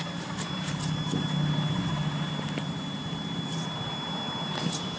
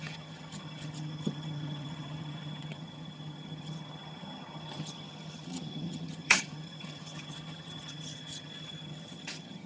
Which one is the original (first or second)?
first